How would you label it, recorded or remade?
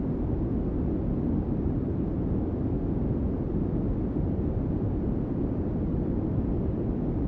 recorded